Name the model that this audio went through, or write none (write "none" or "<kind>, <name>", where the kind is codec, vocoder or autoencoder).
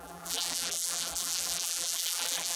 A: vocoder, BigVGAN v2